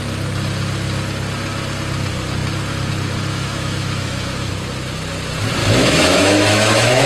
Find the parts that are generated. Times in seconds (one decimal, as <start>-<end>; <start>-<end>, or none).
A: 3.3-4.5; 5.6-7.1